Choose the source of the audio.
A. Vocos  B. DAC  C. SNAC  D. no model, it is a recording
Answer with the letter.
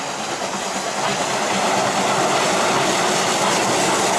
D